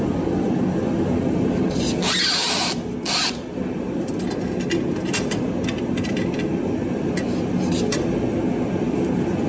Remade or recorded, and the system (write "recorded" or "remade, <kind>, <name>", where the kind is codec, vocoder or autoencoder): recorded